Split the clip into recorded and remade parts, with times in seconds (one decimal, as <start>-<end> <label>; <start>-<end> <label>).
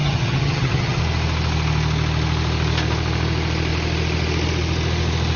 0.0-1.0 remade; 1.0-5.4 recorded